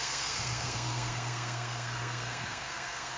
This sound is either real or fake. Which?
fake